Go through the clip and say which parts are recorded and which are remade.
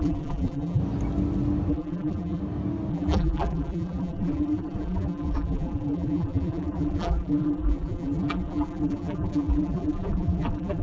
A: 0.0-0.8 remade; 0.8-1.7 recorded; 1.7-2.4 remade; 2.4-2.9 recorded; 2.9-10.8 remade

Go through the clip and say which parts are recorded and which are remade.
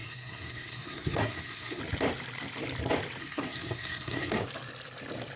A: 0.0-1.8 remade; 1.8-3.2 recorded; 3.2-4.4 remade; 4.4-5.4 recorded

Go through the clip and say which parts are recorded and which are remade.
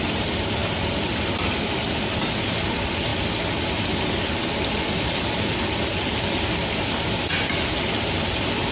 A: 0.0-8.7 recorded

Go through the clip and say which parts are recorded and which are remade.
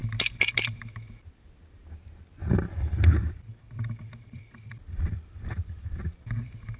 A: 0.0-1.6 remade; 1.6-2.4 recorded; 2.4-6.8 remade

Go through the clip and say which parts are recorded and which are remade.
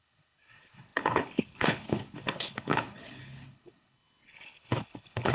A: 0.0-5.3 remade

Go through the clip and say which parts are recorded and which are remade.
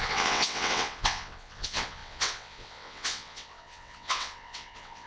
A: 0.0-5.1 remade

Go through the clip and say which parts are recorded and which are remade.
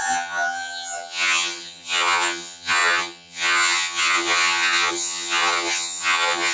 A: 0.0-6.5 remade